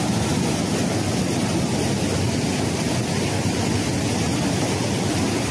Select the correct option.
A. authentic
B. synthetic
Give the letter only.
A